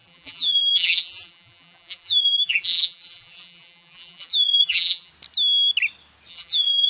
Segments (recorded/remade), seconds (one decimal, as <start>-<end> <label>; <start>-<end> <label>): 0.0-5.1 remade; 5.1-6.3 recorded; 6.3-6.9 remade